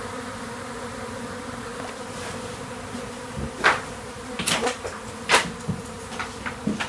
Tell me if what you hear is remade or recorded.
recorded